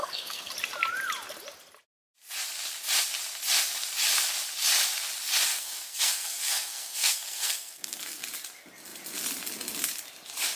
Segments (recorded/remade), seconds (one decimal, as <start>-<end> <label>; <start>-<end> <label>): 0.0-0.5 remade; 0.5-5.5 recorded; 5.5-8.2 remade; 8.2-10.6 recorded